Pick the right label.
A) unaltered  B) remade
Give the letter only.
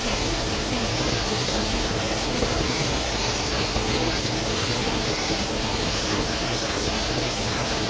B